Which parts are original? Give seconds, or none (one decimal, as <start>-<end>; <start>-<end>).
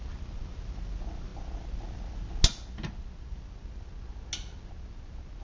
0.0-5.4